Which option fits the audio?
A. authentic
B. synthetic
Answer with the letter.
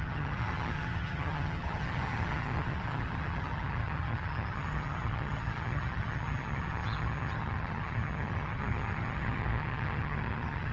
B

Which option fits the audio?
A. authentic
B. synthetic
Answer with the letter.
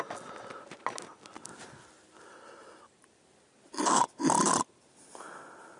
A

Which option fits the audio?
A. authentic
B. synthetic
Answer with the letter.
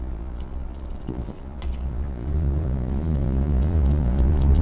B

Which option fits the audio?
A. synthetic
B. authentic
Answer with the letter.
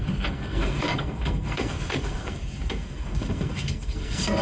A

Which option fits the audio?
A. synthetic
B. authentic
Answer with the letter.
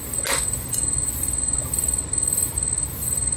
B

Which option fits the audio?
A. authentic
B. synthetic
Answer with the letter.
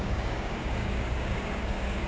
B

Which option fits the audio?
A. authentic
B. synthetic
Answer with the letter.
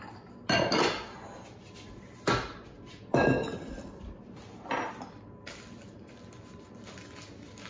A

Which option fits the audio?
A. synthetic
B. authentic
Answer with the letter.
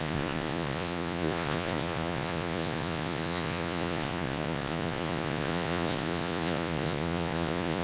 A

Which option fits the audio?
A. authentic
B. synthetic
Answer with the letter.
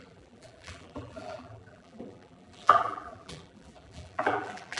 B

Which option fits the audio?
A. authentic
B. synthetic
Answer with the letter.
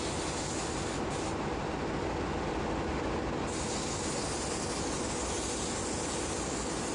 A